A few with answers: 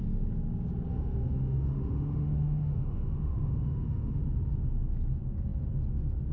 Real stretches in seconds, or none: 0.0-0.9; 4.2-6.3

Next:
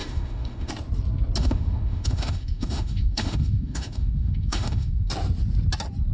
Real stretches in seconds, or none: 0.7-1.4; 5.1-6.1

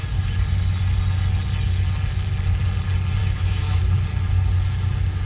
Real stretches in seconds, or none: 0.0-3.2; 3.8-5.3

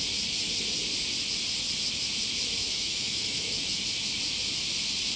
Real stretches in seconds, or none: 0.0-2.6; 3.8-5.2

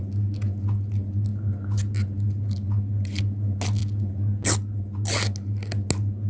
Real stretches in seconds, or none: 0.0-6.3